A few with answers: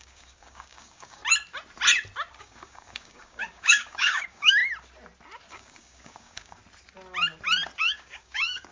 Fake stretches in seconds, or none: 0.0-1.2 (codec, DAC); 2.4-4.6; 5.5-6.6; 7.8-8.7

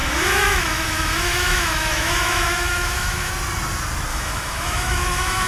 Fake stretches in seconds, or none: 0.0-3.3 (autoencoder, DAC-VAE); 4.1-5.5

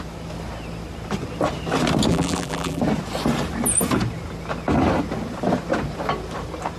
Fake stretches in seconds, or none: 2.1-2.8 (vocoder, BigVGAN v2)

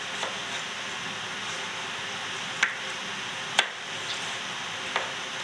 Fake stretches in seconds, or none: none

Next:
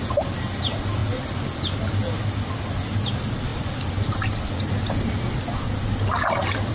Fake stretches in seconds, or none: none

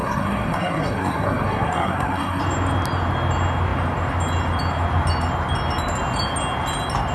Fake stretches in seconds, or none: 0.0-2.4 (codec, SNAC)